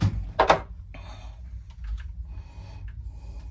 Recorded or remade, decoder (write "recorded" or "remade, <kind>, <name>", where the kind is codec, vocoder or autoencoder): recorded